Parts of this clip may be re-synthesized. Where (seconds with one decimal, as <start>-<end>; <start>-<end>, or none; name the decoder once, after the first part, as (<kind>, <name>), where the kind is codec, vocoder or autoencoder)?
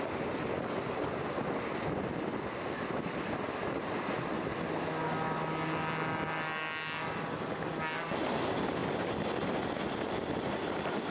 none